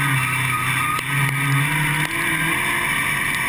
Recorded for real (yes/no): yes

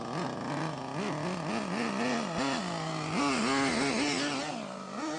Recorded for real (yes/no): yes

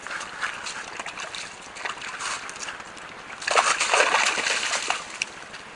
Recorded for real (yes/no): yes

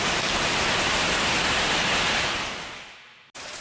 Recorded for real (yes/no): yes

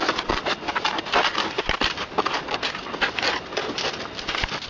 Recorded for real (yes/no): yes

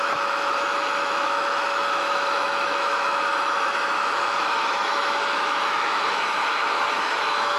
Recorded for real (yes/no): no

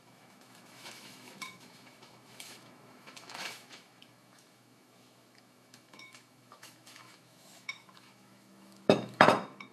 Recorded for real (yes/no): no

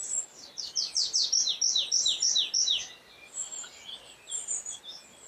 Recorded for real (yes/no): yes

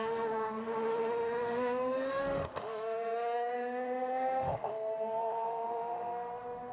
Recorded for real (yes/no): no